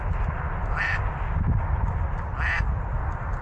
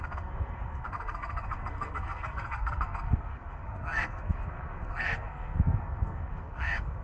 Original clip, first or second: first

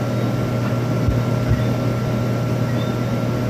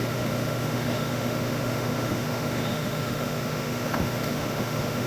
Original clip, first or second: first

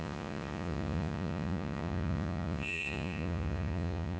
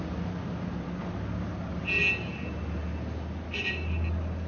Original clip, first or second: second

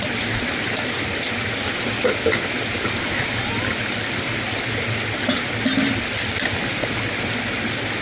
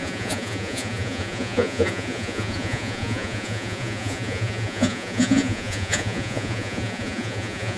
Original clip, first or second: first